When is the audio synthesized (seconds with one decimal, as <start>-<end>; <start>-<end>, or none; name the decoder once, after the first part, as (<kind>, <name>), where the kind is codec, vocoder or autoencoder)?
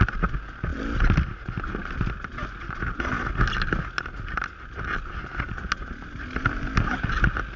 none